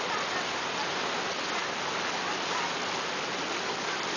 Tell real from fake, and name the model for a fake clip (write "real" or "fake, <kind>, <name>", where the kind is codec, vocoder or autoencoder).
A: real